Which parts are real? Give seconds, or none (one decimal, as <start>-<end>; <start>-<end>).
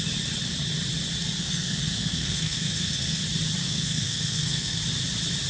0.0-1.4; 3.2-3.6; 4.8-5.5